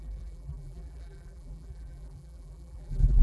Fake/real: fake